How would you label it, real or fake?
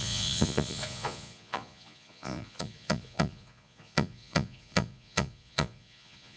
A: fake